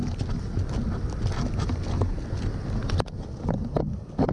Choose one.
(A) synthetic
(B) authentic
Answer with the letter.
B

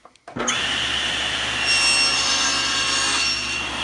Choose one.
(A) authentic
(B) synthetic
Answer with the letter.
A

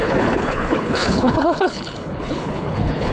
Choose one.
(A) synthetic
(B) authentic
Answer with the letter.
A